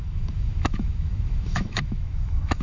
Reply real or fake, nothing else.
fake